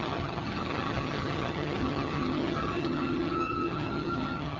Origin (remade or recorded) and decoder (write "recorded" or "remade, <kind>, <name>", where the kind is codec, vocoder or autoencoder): remade, vocoder, HiFi-GAN